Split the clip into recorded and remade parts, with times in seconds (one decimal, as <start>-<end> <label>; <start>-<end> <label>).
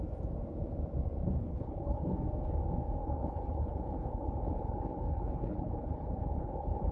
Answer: 0.0-1.4 recorded; 1.4-2.1 remade; 2.1-3.0 recorded; 3.0-6.9 remade